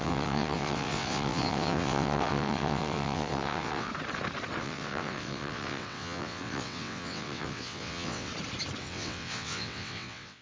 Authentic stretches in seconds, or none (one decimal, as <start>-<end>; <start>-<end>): 3.9-4.6; 8.3-8.8

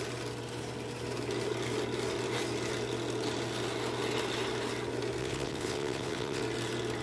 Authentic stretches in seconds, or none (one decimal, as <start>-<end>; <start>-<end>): 0.0-5.2; 6.4-7.0

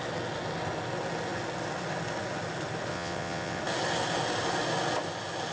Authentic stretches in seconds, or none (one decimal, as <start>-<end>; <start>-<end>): 0.0-2.9; 3.6-5.5

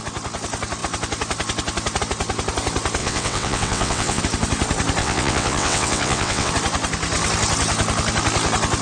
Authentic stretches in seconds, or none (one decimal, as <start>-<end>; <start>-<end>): 0.0-3.0; 4.2-5.0; 6.5-8.8

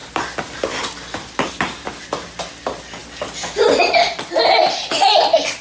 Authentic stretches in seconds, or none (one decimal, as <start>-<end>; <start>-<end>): 0.0-5.6

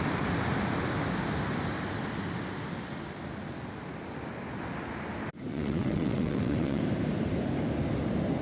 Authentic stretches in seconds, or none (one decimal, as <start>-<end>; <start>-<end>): 0.0-5.5; 6.8-8.4

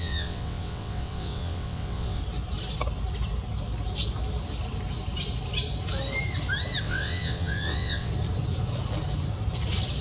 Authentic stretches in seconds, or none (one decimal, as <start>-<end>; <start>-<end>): 2.2-6.8; 8.1-10.0

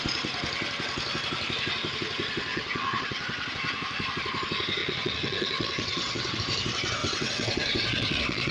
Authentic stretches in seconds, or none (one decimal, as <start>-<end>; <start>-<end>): 0.0-2.5; 3.5-4.8; 6.4-7.0